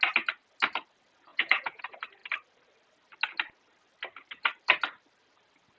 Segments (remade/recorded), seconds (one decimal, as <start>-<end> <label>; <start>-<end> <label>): 0.0-1.3 recorded; 1.3-1.8 remade; 1.8-5.8 recorded